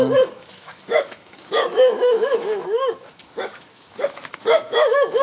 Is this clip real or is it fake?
fake